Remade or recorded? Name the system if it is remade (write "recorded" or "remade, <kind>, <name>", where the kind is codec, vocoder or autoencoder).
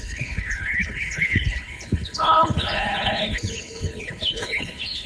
remade, codec, HILCodec